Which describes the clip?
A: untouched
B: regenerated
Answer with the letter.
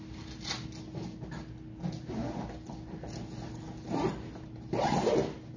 A